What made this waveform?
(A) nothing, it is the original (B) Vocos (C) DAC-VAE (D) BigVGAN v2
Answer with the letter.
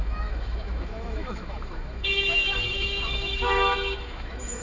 C